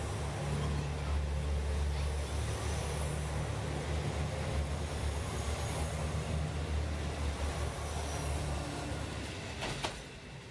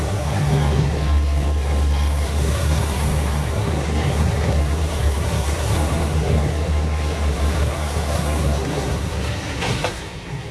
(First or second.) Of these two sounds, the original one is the first